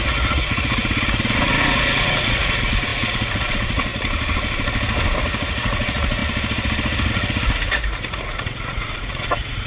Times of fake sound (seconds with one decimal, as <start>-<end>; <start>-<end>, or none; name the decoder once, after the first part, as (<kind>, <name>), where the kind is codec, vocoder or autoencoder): 0.0-3.9 (vocoder, Vocos); 5.2-6.2; 7.1-9.7